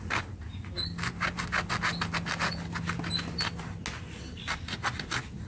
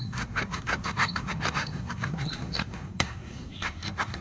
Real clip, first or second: first